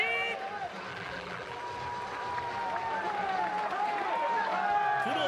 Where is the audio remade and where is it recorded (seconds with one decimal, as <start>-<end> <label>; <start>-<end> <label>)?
0.0-0.9 recorded; 0.9-1.6 remade; 1.6-5.3 recorded